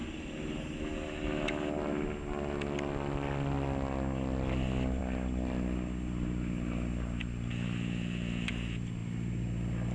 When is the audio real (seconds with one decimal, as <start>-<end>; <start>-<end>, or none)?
0.0-9.9